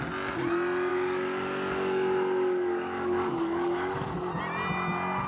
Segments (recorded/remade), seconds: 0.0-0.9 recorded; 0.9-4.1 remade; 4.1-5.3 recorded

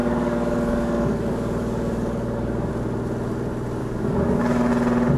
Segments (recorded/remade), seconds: 0.0-2.7 remade; 2.7-3.8 recorded; 3.8-4.7 remade; 4.7-5.2 recorded

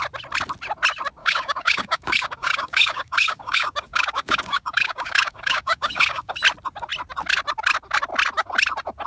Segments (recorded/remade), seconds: 0.0-1.2 recorded; 1.2-6.3 remade; 6.3-9.1 recorded

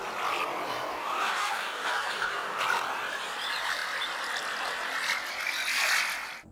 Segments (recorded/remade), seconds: 0.0-0.9 recorded; 0.9-2.6 remade; 2.6-6.5 recorded

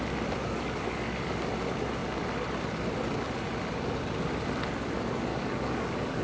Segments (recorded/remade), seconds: 0.0-0.4 recorded; 0.4-1.5 remade; 1.5-5.3 recorded; 5.3-6.2 remade

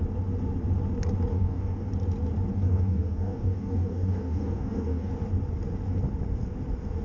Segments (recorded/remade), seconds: 0.0-1.3 recorded; 1.3-1.9 remade; 1.9-2.5 recorded; 2.5-5.1 remade; 5.1-7.0 recorded

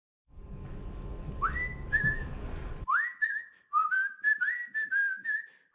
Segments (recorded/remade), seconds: 0.0-3.8 remade; 3.8-5.7 recorded

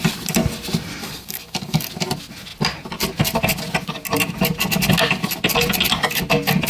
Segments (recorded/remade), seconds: 0.0-1.0 recorded; 1.0-1.9 remade; 1.9-6.7 recorded